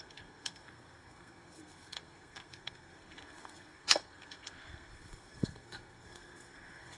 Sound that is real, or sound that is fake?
fake